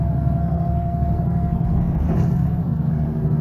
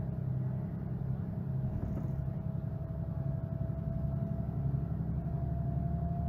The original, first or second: second